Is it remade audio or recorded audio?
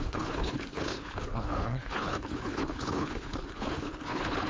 remade